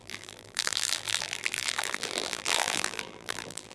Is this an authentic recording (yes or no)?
no